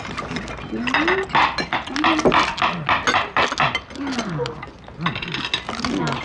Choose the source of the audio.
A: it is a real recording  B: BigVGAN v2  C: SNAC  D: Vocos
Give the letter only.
A